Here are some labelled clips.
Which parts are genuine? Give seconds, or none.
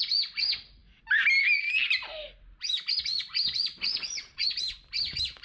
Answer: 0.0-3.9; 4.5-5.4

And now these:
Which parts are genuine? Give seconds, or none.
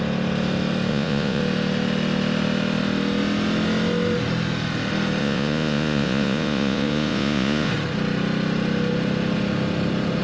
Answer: 0.0-0.9; 1.4-5.2; 7.7-10.2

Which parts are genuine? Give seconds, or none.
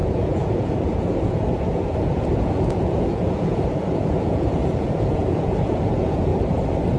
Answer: 6.3-7.0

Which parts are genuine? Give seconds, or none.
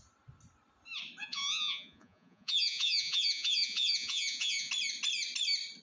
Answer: 0.0-1.2; 4.7-5.8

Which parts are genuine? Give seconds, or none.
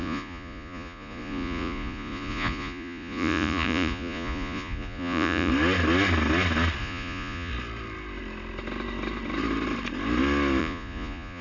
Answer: 5.5-6.8; 7.5-10.6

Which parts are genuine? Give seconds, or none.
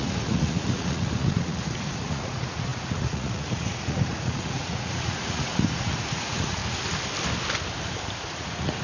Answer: 6.6-8.3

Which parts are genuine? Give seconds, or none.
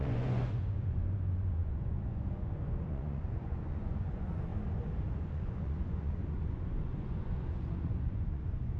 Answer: 4.5-5.2